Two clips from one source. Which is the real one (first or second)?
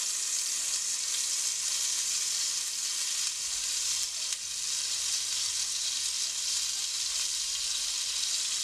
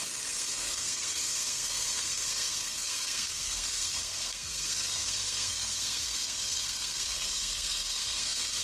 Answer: first